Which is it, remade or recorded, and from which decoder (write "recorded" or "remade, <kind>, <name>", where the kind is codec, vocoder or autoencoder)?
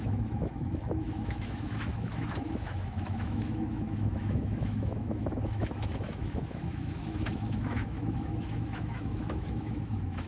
remade, autoencoder, DAC-VAE